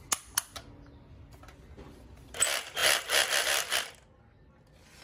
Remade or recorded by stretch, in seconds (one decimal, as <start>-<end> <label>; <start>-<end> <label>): 0.0-5.0 recorded